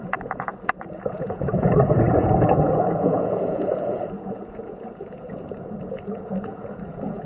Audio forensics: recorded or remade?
remade